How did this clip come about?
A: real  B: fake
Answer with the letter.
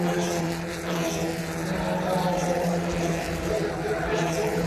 B